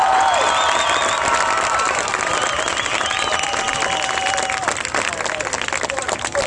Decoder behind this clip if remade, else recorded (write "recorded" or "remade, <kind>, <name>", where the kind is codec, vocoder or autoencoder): remade, vocoder, BigVGAN v2